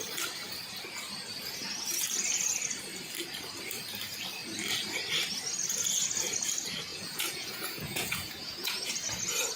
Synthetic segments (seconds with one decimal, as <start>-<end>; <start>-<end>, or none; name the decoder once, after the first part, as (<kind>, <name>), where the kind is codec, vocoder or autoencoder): 6.9-8.9 (vocoder, Vocos)